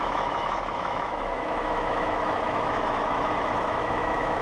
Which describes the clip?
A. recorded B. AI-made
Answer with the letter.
B